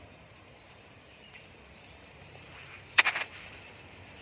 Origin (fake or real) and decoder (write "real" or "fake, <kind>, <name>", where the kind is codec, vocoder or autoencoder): fake, vocoder, BigVGAN v2